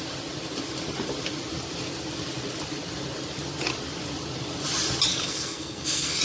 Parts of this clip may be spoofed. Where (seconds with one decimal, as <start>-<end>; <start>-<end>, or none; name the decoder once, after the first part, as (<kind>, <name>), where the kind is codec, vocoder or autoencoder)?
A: 5.1-6.2 (codec, SNAC)

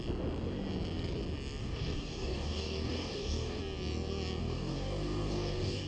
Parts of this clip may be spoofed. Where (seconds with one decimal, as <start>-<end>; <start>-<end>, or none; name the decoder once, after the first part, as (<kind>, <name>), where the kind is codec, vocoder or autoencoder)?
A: 1.6-3.6 (codec, DAC); 4.4-5.9

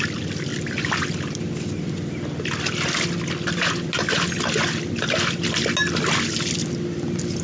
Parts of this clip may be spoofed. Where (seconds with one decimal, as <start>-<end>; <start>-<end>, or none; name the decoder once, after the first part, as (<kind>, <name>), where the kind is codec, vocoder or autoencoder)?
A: none

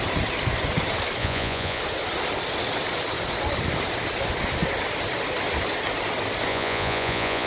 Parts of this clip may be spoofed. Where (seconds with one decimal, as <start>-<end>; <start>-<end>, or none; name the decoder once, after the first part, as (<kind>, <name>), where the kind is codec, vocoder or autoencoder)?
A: 1.2-1.8 (vocoder, Vocos); 6.5-7.5

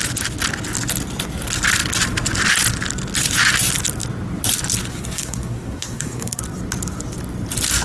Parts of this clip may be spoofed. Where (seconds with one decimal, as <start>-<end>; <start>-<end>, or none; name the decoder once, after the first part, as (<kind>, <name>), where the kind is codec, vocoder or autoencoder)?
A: 4.9-6.4 (codec, SNAC)

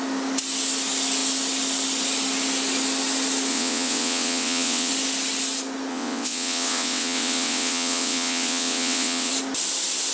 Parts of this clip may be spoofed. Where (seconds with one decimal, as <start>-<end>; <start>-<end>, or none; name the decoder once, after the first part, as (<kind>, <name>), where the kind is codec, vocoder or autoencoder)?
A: 3.5-4.9 (vocoder, WaveNeXt); 5.9-9.3

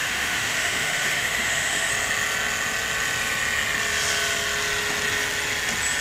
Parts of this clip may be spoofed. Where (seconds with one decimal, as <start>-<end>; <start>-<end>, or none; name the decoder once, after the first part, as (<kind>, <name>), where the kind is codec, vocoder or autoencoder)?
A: 0.0-1.9 (autoencoder, DAC-VAE)